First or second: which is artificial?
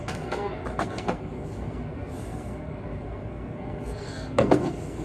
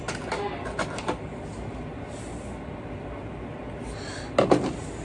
first